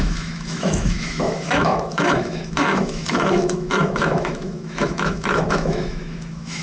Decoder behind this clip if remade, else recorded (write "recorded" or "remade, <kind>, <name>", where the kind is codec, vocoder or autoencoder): remade, autoencoder, DAC-VAE